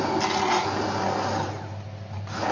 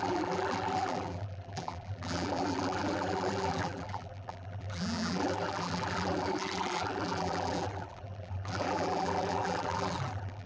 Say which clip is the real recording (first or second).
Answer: first